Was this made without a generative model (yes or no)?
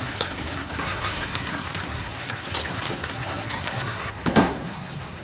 no